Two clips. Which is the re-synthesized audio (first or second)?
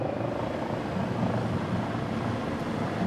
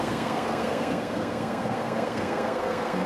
second